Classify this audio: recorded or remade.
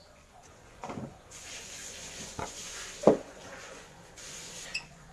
remade